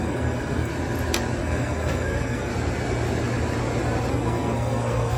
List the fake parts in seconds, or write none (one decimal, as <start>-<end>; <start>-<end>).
0.0-0.7; 1.4-2.5; 4.1-5.2